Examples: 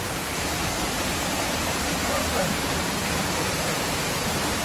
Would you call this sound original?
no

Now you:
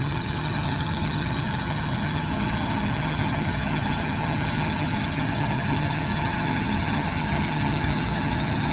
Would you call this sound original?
no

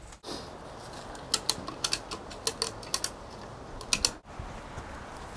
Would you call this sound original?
yes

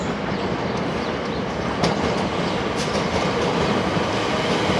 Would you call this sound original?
yes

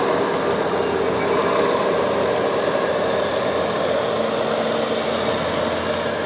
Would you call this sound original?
yes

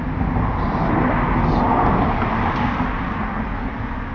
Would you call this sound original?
yes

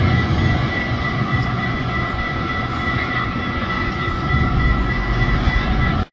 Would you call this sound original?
no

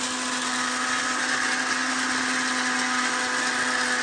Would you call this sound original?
yes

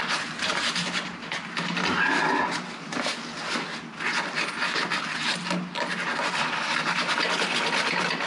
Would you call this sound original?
yes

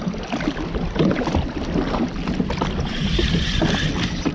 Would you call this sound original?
yes